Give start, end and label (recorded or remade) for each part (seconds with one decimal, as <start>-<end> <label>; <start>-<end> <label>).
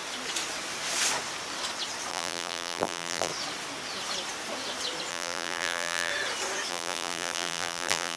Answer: 0.0-2.1 recorded; 2.1-3.3 remade; 3.3-5.1 recorded; 5.1-6.1 remade; 6.1-6.7 recorded; 6.7-8.2 remade